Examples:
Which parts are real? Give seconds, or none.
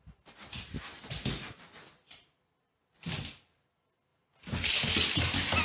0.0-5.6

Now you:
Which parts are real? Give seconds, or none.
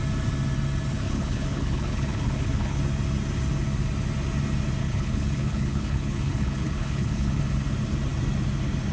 0.0-0.9; 2.8-4.8; 7.4-8.9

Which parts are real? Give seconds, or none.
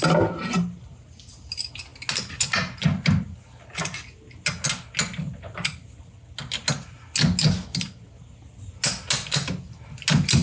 0.0-10.4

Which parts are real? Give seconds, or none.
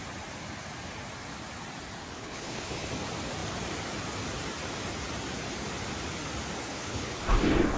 0.0-2.1; 2.9-6.6; 7.2-7.8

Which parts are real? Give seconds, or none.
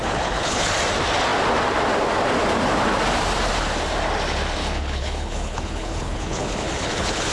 0.7-4.6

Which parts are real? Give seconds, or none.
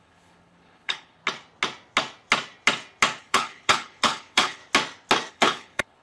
1.2-3.2; 4.6-5.3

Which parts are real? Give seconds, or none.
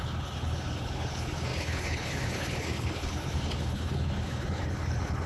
none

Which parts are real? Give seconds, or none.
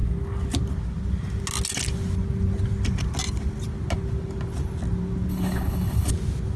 0.0-5.3; 6.1-6.6